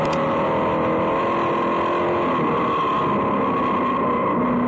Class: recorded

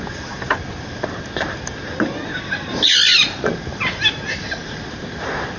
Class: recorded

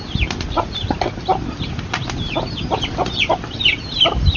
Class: recorded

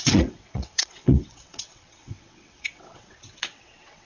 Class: remade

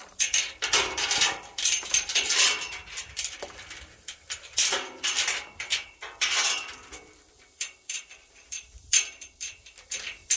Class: recorded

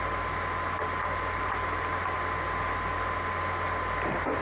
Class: recorded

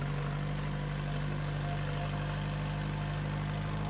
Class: recorded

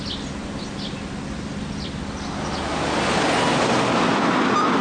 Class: recorded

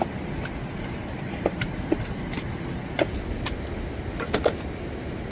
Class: recorded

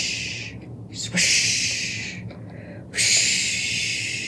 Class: recorded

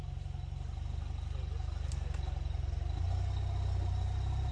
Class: recorded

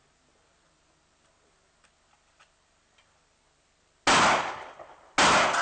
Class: recorded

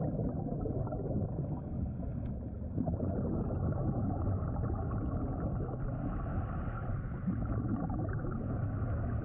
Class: recorded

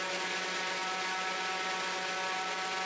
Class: recorded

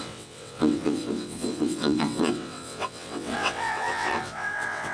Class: remade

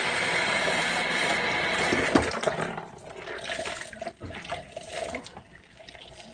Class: recorded